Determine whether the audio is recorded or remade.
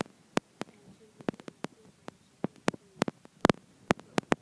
recorded